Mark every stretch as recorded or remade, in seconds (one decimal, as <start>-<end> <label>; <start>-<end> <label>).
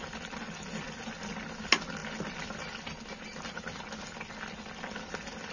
0.0-5.5 recorded